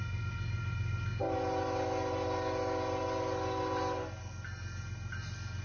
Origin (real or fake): real